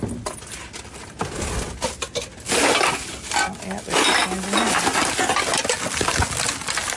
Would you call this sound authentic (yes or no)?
yes